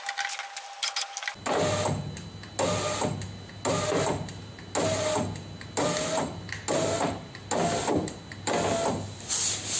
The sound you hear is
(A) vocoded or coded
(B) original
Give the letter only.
B